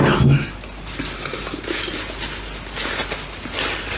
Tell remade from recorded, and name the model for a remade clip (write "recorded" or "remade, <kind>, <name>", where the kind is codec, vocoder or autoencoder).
recorded